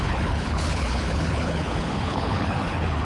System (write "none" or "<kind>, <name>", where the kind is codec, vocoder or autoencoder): codec, HILCodec